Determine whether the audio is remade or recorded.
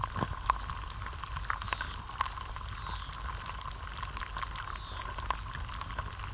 recorded